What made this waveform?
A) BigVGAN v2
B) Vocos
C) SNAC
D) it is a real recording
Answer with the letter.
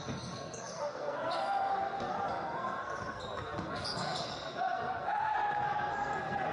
C